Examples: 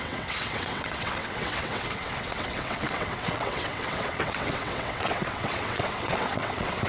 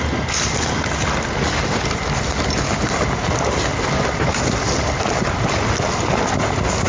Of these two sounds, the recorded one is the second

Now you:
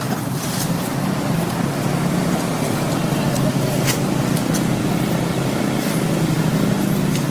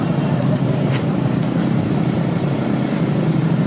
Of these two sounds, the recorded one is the first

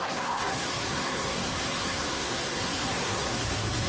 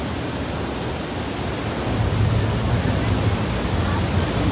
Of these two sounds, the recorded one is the second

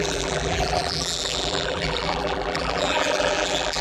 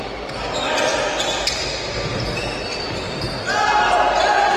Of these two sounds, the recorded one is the second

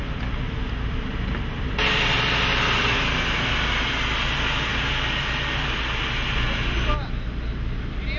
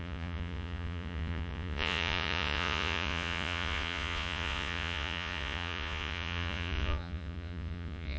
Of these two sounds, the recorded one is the first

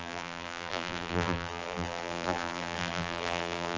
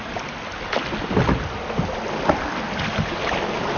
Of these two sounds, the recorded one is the second